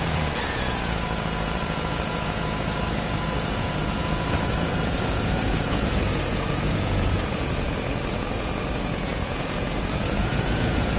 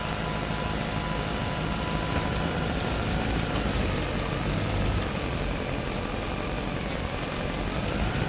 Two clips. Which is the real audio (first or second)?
second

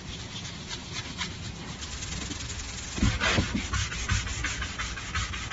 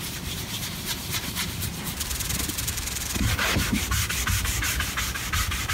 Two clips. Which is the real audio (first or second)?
first